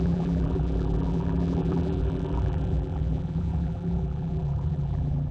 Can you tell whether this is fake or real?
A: fake